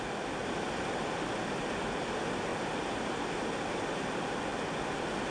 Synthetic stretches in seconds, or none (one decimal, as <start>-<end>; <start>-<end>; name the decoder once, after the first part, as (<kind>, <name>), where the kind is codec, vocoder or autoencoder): 2.5-3.2 (vocoder, BigVGAN v2)